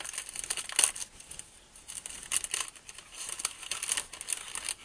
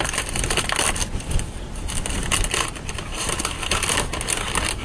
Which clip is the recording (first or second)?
first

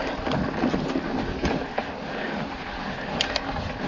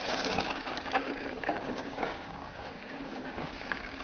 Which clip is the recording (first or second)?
first